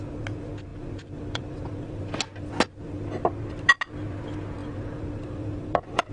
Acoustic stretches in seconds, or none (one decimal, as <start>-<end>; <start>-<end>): 0.0-0.7; 2.0-4.6